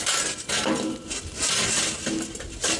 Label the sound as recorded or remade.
recorded